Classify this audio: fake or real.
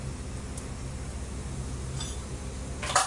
real